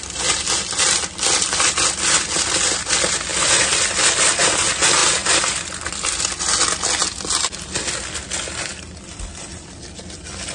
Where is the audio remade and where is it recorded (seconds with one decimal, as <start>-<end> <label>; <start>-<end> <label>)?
0.0-10.5 recorded